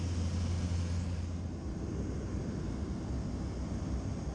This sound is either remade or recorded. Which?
recorded